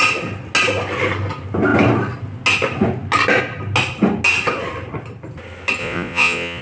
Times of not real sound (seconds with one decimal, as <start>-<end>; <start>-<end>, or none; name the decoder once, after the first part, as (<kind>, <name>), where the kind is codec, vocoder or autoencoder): 5.8-6.6 (vocoder, Vocos)

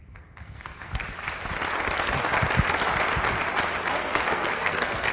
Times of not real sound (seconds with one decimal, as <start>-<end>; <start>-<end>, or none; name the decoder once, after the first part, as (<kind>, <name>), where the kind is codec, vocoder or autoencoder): 0.0-1.0 (codec, SNAC); 3.9-5.1

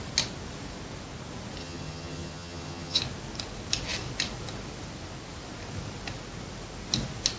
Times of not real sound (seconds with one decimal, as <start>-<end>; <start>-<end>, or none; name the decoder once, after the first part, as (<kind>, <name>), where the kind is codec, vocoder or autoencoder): 1.6-3.0 (vocoder, HiFi-GAN)

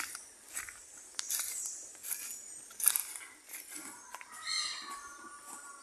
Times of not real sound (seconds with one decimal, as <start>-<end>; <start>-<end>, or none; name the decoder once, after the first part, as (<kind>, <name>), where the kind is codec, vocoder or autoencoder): 1.6-2.2 (vocoder, BigVGAN v2)

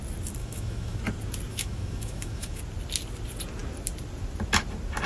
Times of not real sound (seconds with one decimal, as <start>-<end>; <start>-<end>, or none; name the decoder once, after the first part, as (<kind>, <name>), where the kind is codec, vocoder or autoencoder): 0.4-1.0 (autoencoder, DAC-VAE); 1.5-2.6